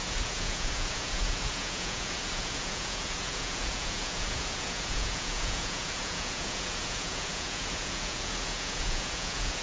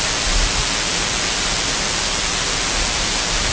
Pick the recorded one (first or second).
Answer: second